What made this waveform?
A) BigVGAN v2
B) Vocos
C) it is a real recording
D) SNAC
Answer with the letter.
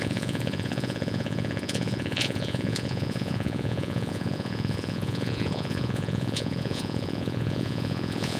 B